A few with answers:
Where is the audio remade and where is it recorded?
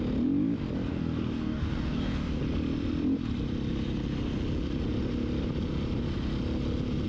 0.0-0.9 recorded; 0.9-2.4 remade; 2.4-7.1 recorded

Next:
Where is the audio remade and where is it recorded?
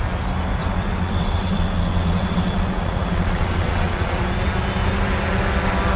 0.0-0.6 recorded; 0.6-4.2 remade; 4.2-6.0 recorded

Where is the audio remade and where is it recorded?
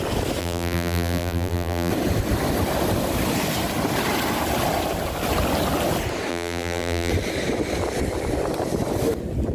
0.0-0.4 recorded; 0.4-1.9 remade; 1.9-6.3 recorded; 6.3-7.1 remade; 7.1-9.5 recorded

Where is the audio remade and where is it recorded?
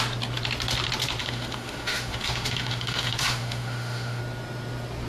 0.0-1.2 recorded; 1.2-4.2 remade; 4.2-5.1 recorded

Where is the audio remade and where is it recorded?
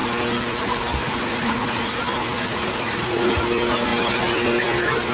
0.0-1.0 recorded; 1.0-1.9 remade; 1.9-2.5 recorded; 2.5-3.4 remade; 3.4-5.1 recorded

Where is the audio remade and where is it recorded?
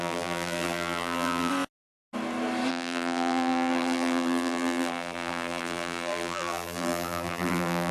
0.0-1.5 remade; 1.5-2.7 recorded; 2.7-7.9 remade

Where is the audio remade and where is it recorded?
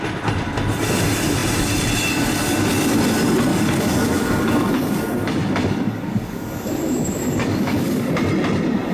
0.0-3.5 recorded; 3.5-8.1 remade; 8.1-8.9 recorded